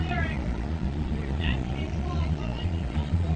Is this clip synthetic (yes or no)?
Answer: yes